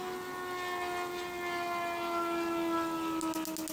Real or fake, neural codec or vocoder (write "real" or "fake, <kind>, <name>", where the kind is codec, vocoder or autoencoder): real